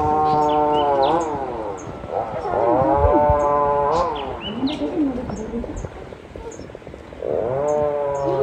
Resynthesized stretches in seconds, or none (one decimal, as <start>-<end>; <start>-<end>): 5.6-7.4